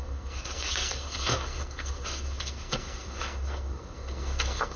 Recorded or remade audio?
remade